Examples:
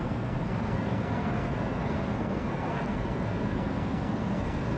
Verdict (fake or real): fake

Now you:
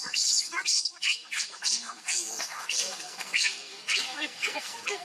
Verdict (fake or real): fake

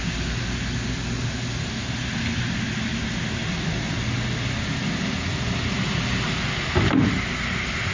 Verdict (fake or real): real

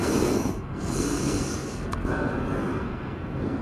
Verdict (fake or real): fake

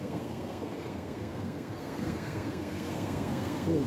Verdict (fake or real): fake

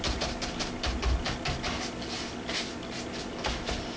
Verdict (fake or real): real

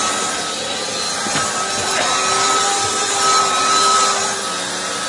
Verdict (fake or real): real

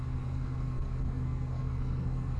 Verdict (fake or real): fake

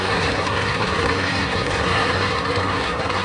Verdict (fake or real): fake